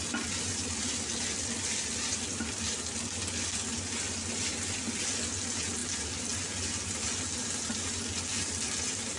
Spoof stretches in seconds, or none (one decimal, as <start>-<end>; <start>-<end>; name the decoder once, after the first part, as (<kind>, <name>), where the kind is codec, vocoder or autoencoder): none